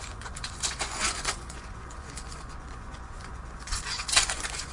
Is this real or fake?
fake